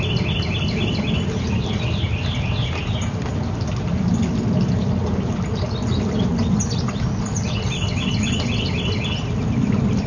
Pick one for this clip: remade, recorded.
recorded